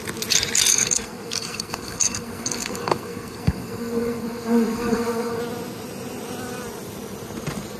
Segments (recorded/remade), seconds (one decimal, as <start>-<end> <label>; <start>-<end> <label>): 0.0-0.7 recorded; 0.7-5.4 remade; 5.4-7.8 recorded